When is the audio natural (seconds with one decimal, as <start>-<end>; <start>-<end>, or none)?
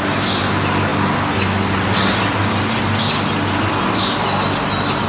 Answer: 0.0-5.1